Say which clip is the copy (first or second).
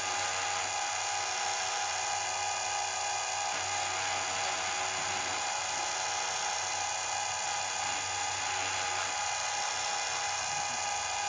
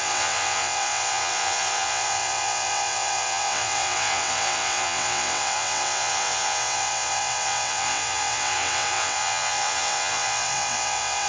second